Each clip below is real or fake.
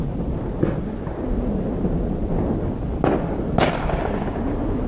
real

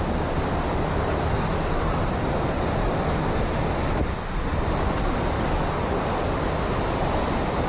real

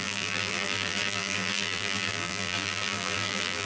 fake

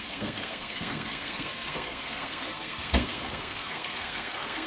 fake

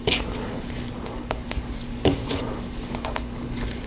fake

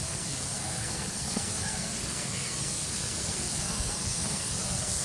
fake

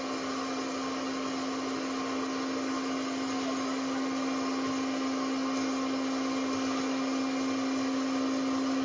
real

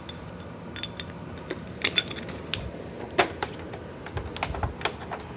real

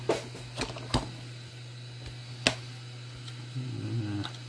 real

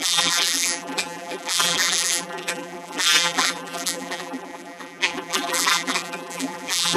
fake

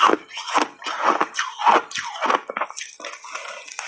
real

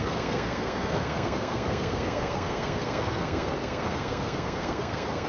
fake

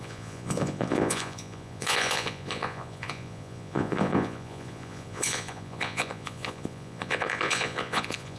fake